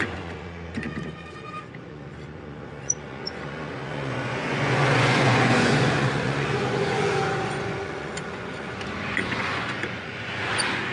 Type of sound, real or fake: fake